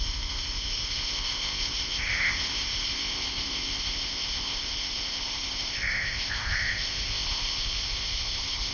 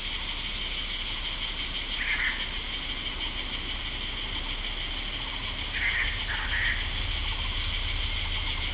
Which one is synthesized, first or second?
first